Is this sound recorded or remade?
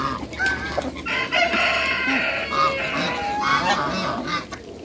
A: recorded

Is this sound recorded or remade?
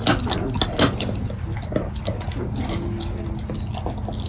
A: recorded